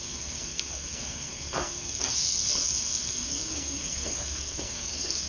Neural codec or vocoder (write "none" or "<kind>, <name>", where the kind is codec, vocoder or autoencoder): codec, SNAC